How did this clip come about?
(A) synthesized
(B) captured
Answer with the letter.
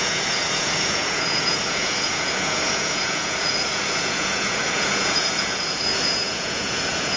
A